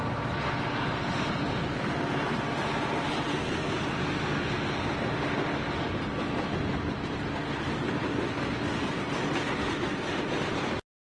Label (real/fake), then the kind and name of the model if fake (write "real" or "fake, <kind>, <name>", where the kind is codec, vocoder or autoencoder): real